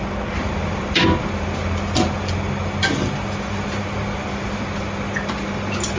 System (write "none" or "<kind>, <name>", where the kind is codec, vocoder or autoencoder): none